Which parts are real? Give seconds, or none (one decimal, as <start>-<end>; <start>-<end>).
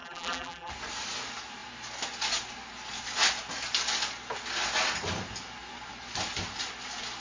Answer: 0.7-7.2